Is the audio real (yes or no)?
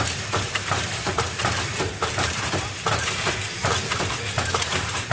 no